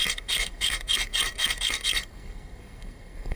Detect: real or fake fake